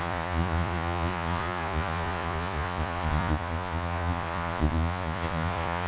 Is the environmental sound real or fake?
fake